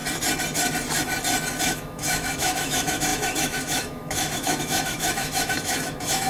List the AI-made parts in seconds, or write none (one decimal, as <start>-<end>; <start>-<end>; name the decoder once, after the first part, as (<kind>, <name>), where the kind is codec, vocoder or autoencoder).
1.6-6.3 (autoencoder, DAC-VAE)